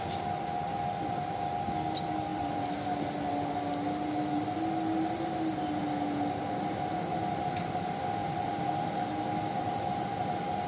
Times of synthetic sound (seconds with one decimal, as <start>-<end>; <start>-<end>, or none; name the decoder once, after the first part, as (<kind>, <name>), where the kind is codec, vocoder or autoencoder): 2.3-3.3 (vocoder, BigVGAN v2); 8.2-9.1